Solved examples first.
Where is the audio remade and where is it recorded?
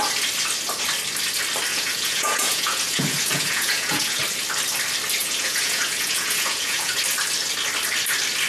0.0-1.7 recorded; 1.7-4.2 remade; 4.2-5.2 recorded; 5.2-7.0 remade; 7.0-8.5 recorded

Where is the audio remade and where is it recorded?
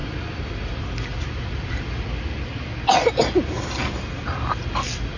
0.0-5.2 recorded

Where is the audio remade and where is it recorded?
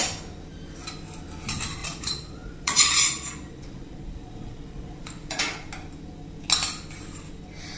0.0-1.8 recorded; 1.8-5.7 remade; 5.7-7.8 recorded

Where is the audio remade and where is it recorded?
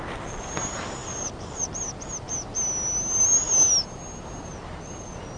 0.0-5.4 recorded